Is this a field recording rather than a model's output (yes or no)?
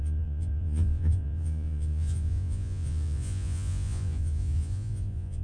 no